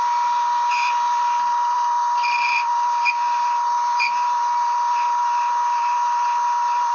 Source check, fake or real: fake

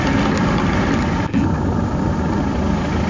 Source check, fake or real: real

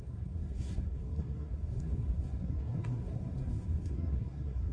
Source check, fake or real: fake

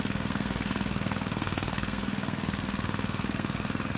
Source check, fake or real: fake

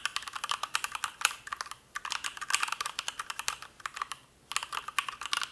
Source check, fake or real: real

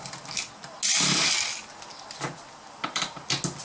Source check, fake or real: real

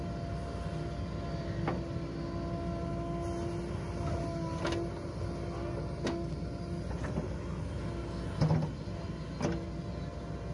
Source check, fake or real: real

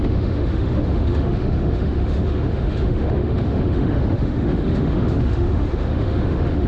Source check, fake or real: fake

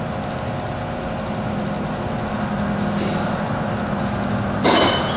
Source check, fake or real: real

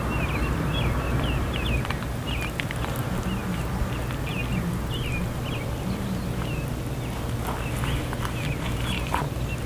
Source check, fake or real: real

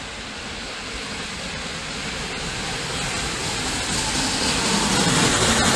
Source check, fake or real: real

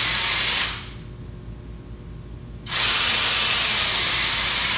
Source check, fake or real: real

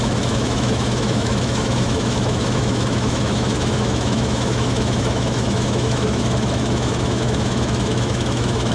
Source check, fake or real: fake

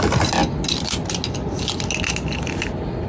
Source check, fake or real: real